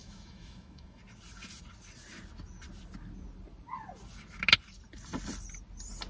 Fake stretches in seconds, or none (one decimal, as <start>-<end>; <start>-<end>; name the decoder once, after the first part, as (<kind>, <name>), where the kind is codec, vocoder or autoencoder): 0.0-1.0 (autoencoder, DAC-VAE)